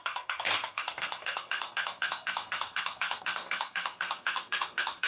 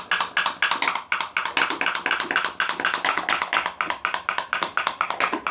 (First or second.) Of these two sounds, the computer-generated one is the first